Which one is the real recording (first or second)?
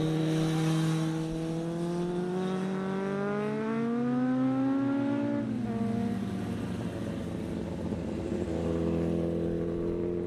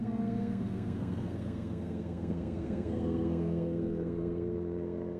first